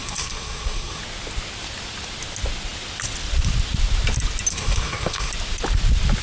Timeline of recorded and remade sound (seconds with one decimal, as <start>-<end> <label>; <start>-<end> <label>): 0.0-1.0 remade; 1.0-4.5 recorded; 4.5-5.3 remade; 5.3-6.2 recorded